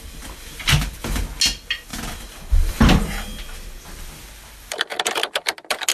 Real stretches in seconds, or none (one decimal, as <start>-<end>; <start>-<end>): 0.0-5.9